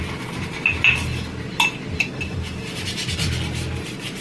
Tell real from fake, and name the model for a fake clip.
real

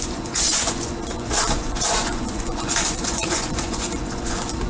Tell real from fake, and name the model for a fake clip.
fake, vocoder, Vocos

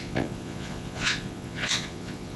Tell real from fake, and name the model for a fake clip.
fake, vocoder, Vocos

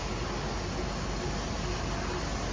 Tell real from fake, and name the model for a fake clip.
real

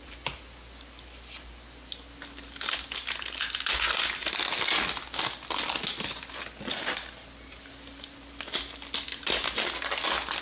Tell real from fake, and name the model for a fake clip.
real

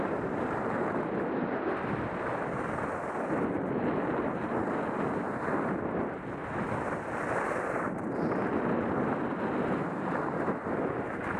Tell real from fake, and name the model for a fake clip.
real